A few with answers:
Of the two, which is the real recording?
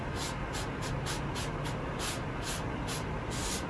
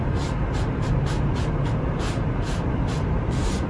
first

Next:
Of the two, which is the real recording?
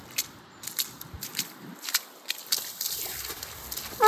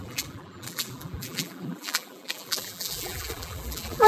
first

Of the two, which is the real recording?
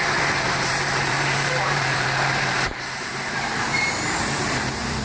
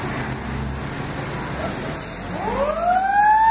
second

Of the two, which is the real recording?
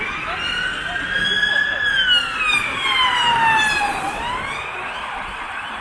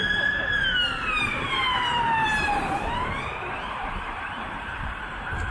first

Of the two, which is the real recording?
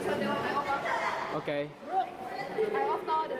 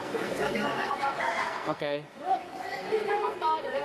first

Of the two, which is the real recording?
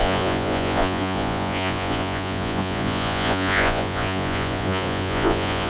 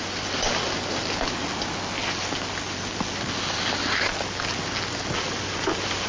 second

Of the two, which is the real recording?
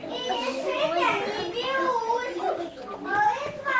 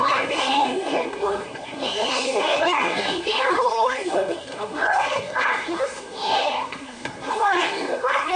first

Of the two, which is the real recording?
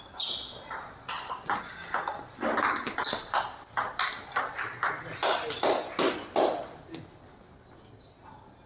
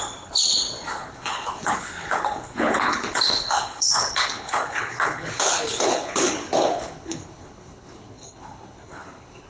first